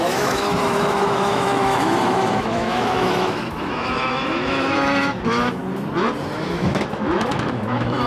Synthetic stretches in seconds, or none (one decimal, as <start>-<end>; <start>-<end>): 0.0-5.6; 6.4-8.1